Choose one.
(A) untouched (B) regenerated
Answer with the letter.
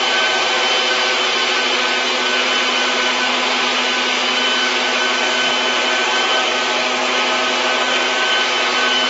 A